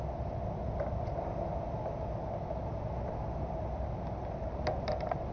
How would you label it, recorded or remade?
recorded